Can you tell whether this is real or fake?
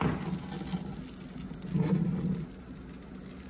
real